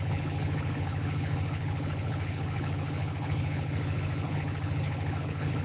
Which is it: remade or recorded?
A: remade